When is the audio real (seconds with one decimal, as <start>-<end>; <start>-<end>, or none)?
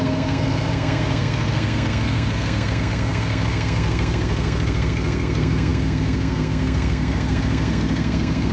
none